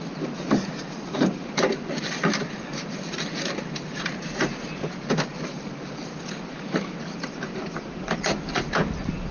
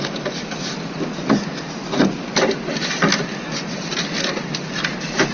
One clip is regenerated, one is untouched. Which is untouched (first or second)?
second